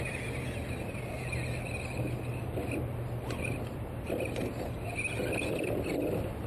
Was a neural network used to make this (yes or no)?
no